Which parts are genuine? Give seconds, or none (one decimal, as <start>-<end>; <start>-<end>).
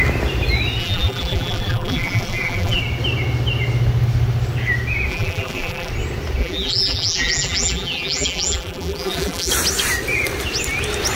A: 0.0-0.8; 2.8-5.1; 5.9-6.4; 9.5-11.2